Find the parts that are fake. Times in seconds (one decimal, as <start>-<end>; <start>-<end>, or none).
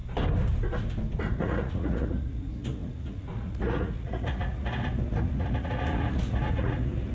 1.2-7.1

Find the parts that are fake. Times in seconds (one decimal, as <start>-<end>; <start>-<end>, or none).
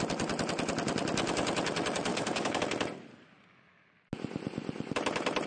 2.1-2.6